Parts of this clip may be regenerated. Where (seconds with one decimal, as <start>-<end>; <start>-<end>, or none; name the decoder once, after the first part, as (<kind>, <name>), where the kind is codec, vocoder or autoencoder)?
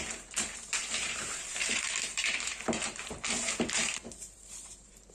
0.0-5.1 (vocoder, BigVGAN v2)